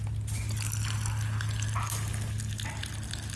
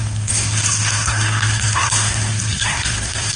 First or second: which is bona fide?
first